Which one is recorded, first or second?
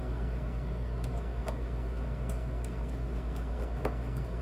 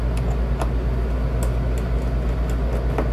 second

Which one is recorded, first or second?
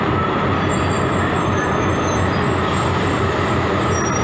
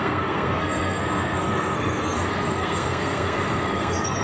first